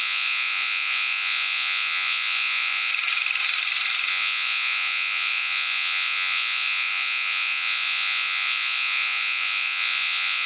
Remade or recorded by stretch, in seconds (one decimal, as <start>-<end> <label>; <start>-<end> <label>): 0.0-2.9 remade; 2.9-4.1 recorded; 4.1-10.5 remade